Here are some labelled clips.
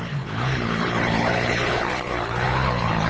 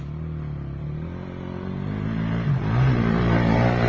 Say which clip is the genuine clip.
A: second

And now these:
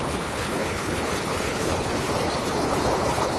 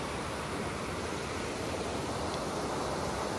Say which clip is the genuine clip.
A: second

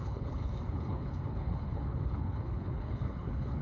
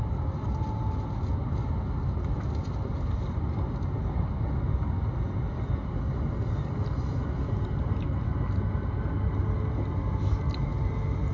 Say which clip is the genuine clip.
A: second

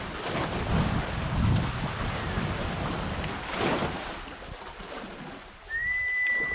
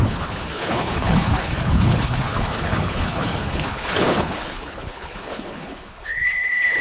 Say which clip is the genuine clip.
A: first